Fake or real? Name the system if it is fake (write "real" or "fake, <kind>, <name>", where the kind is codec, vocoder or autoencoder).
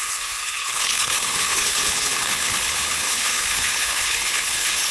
fake, codec, HILCodec